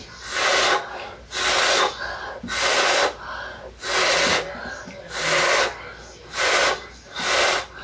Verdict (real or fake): real